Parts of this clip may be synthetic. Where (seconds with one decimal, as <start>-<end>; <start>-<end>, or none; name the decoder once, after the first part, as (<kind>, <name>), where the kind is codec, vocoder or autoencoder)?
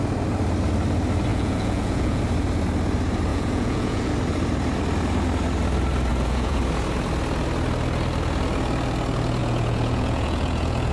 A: 1.3-2.2 (vocoder, Vocos); 3.3-4.1; 6.1-6.6; 9.4-10.9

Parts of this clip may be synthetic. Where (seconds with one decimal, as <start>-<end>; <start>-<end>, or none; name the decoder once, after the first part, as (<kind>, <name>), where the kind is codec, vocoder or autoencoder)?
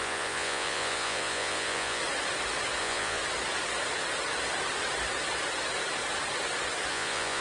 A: 0.0-2.0 (vocoder, Vocos); 2.8-3.2; 6.9-7.4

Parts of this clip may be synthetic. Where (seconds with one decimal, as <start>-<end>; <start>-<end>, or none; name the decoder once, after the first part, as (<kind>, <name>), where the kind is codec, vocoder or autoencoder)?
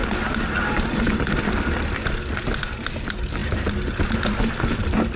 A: none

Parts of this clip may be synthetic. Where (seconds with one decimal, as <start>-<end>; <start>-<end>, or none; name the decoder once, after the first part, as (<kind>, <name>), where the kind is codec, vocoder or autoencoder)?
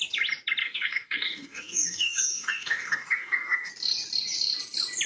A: 0.6-3.7 (codec, DAC)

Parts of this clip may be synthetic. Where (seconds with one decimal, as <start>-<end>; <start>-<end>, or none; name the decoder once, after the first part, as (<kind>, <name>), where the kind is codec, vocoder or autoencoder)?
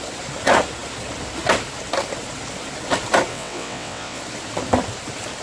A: 3.3-4.2 (vocoder, WaveNeXt)